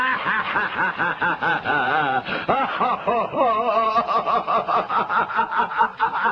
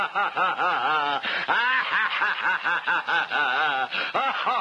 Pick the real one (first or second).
second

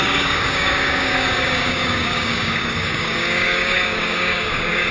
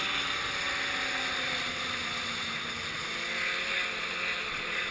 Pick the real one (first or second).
second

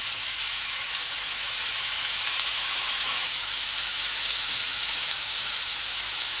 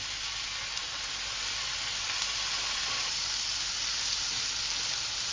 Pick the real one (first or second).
second